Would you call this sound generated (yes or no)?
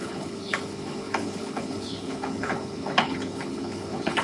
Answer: yes